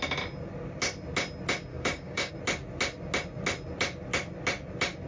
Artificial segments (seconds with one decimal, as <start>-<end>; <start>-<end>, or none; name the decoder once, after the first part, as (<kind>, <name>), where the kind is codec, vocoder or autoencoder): 1.7-2.3 (codec, DAC)